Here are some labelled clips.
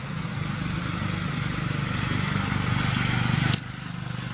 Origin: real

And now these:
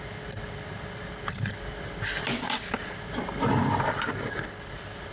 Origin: real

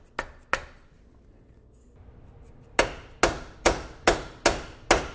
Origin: real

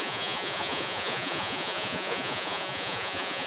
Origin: fake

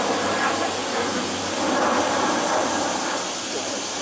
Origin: real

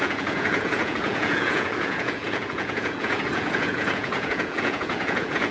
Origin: fake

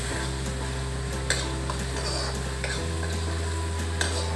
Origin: real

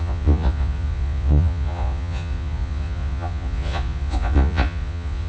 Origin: fake